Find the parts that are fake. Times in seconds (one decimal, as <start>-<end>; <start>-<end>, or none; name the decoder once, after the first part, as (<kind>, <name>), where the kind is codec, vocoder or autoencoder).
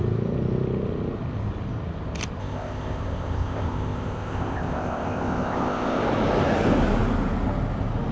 2.4-6.0 (codec, ZipCodec)